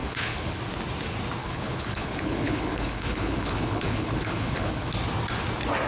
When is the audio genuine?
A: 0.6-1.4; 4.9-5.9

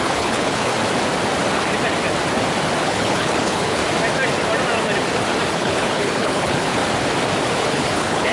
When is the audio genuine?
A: 0.7-2.8; 3.8-5.5; 6.8-7.6